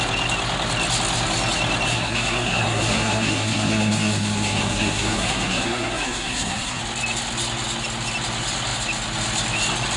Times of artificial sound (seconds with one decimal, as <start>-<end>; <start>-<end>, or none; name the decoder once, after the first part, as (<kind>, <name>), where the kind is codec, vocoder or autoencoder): 1.9-6.8 (codec, SNAC)